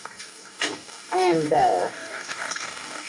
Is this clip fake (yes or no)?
yes